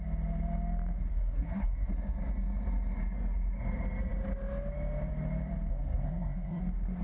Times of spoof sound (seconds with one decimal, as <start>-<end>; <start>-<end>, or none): 1.1-1.9; 5.7-6.6